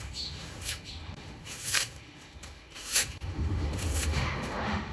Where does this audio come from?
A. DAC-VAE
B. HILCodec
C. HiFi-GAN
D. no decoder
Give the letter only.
A